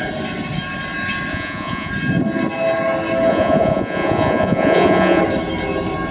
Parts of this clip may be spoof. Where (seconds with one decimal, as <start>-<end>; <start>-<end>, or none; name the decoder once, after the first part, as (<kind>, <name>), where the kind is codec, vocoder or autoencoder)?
1.3-1.9 (vocoder, Vocos); 3.3-5.2